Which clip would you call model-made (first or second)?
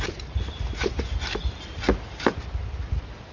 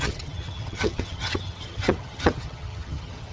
second